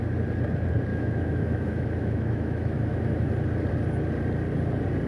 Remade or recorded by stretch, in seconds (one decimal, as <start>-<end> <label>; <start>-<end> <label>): 0.0-0.9 recorded; 0.9-3.3 remade; 3.3-5.1 recorded